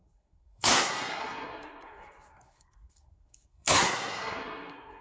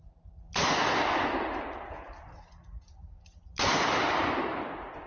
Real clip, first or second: second